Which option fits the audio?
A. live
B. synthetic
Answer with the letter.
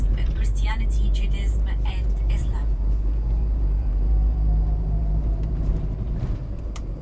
B